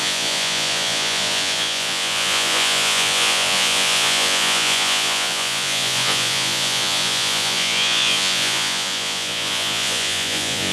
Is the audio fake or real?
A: fake